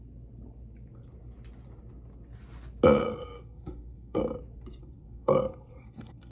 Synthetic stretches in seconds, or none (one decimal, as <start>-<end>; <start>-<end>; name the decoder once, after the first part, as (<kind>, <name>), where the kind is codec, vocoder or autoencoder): 3.0-4.2 (codec, SNAC); 4.8-6.3